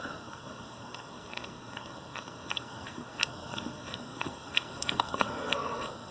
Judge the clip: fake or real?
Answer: fake